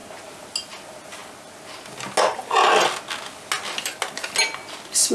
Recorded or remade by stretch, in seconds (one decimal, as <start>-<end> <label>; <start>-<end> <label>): 0.0-5.1 recorded